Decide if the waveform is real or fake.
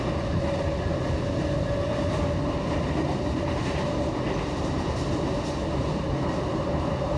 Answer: real